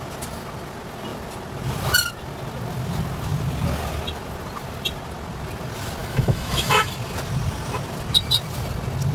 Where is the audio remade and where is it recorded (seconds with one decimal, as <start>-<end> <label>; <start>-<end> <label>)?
0.0-6.0 recorded; 6.0-6.9 remade; 6.9-9.1 recorded